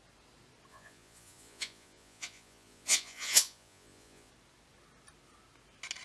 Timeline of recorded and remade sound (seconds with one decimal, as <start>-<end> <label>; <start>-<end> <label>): 0.0-0.7 recorded; 0.7-4.3 remade; 4.3-6.0 recorded